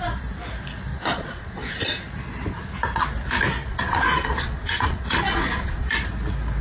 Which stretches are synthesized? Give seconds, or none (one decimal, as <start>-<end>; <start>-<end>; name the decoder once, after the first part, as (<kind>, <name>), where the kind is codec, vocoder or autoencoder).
0.9-1.7 (vocoder, Vocos); 3.7-5.9